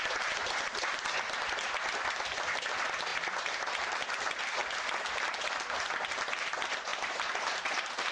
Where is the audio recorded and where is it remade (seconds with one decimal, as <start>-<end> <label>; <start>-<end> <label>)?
0.0-8.1 recorded